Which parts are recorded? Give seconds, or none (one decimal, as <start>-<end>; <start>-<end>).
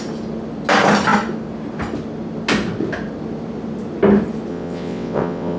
0.0-4.5